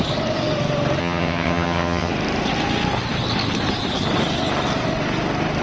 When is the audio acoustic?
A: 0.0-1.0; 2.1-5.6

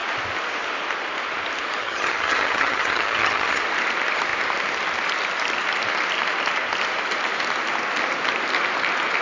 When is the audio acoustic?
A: 0.0-1.8; 3.6-9.2

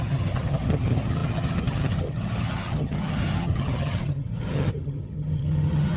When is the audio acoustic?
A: none